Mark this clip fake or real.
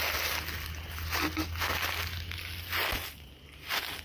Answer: real